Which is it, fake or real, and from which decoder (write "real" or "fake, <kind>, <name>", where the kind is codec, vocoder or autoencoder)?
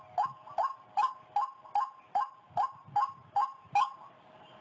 real